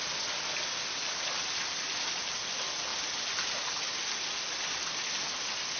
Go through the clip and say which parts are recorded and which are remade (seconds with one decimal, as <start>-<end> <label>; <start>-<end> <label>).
0.0-5.8 recorded